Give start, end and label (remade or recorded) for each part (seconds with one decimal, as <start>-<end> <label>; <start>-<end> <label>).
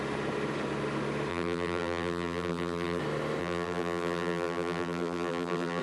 0.0-1.3 recorded; 1.3-3.0 remade; 3.0-3.4 recorded; 3.4-5.8 remade